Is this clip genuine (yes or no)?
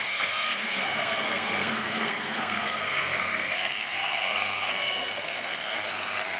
no